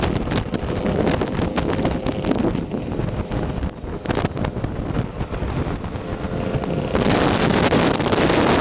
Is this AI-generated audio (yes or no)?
no